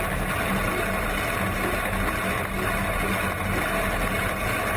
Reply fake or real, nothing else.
real